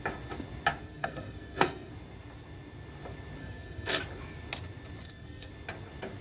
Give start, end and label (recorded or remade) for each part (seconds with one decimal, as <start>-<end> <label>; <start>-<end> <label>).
0.0-0.8 recorded; 0.8-1.9 remade; 1.9-3.4 recorded; 3.4-4.0 remade; 4.0-5.0 recorded; 5.0-5.5 remade; 5.5-6.2 recorded